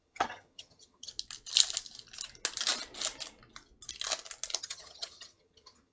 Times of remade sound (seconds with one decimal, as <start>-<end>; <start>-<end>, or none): 0.0-1.1; 4.6-5.9